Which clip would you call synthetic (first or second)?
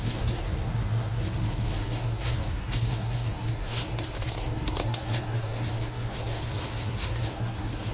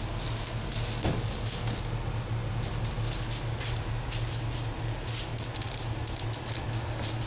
first